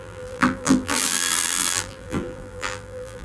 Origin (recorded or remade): remade